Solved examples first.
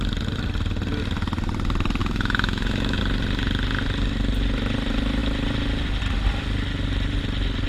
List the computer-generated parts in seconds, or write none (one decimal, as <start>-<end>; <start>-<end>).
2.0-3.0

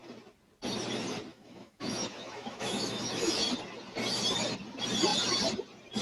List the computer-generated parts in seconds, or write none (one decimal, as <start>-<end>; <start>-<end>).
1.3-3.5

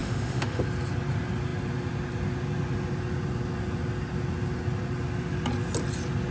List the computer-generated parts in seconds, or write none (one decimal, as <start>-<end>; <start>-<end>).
0.0-0.6

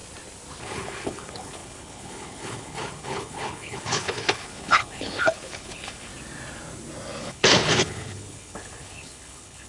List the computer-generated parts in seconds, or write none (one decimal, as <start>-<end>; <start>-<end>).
0.6-6.1; 7.2-9.7